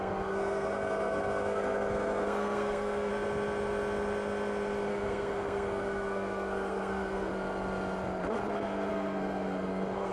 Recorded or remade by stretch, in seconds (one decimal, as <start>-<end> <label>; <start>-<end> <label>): 0.0-3.1 remade; 3.1-4.9 recorded; 4.9-7.3 remade; 7.3-8.9 recorded; 8.9-10.1 remade